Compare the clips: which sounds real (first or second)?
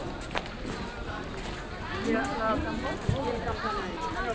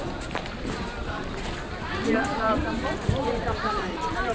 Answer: first